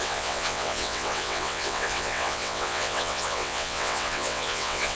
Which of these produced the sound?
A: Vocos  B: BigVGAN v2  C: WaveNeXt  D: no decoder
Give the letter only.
C